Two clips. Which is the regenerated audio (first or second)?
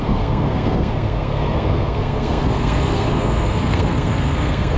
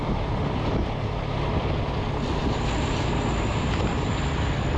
first